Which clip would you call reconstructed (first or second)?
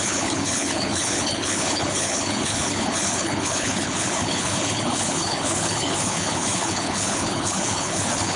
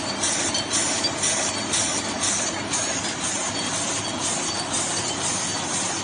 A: first